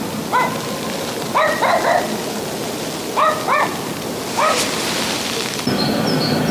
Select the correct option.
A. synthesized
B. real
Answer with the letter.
B